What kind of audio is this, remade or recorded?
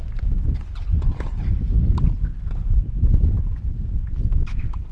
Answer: recorded